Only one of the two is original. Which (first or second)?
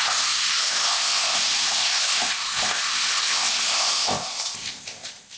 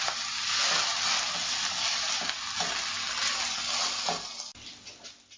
second